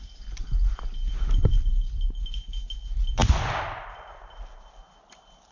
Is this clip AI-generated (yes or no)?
no